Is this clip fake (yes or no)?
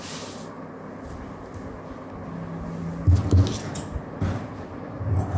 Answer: no